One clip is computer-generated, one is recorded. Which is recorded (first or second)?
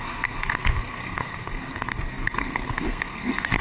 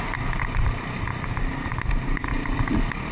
second